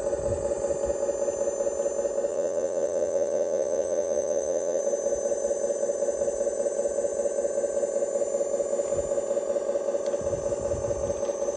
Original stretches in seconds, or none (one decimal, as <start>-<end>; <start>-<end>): 0.0-2.3; 4.8-11.6